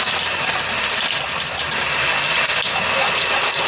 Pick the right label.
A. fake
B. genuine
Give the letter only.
B